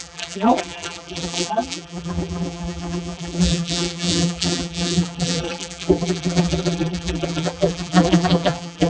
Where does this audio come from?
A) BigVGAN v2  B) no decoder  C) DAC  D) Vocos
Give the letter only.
A